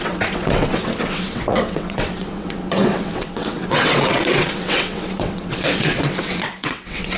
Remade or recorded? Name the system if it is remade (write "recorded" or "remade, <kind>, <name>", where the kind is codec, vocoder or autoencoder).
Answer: remade, vocoder, WaveNeXt